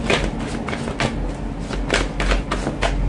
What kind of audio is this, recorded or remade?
recorded